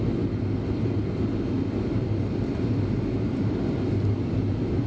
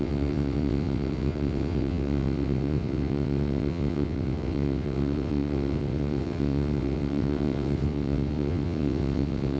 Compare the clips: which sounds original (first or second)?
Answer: first